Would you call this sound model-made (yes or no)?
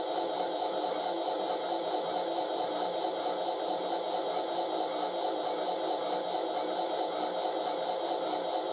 no